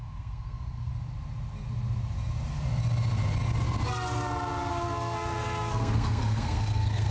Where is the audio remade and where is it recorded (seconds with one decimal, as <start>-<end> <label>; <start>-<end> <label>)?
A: 0.0-0.9 remade; 0.9-4.7 recorded; 4.7-7.1 remade